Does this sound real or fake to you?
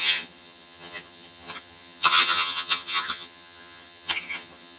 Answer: fake